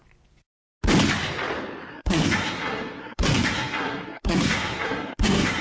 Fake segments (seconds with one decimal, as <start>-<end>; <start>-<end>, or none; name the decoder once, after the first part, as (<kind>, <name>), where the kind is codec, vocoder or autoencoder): 1.9-5.6 (codec, SNAC)